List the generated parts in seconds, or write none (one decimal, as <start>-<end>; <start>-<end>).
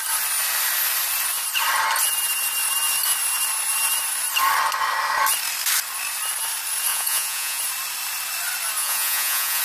6.9-7.6; 8.8-9.6